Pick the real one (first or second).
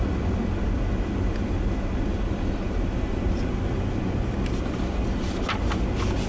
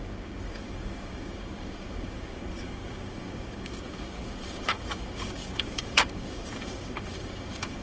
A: first